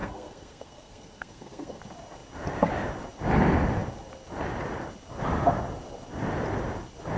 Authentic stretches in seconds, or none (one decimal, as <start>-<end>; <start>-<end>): 1.8-7.2